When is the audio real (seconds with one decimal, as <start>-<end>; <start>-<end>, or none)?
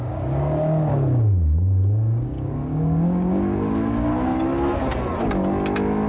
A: 4.3-6.1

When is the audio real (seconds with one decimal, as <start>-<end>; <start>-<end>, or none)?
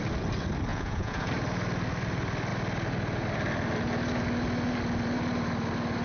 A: 0.0-0.7; 1.3-6.0